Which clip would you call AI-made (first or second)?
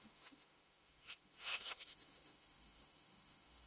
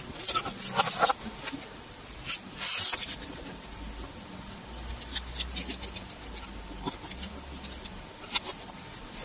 first